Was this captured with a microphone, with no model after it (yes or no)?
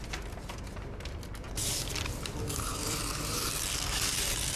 no